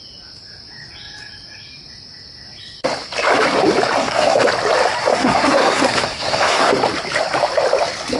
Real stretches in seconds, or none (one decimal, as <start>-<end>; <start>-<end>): 0.0-4.0; 4.5-5.1; 6.7-8.2